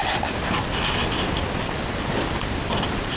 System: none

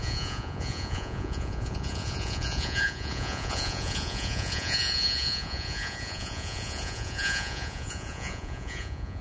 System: vocoder, Vocos